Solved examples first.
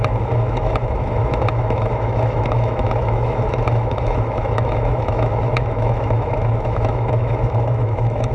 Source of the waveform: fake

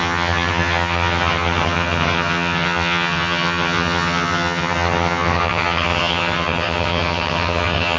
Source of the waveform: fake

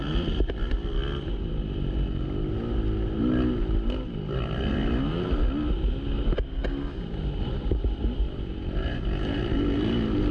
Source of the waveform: real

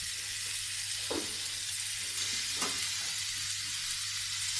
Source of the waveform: real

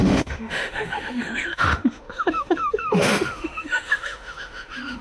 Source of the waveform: fake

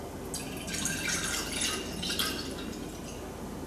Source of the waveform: real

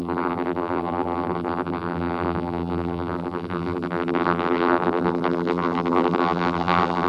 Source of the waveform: fake